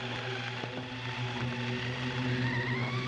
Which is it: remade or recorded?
recorded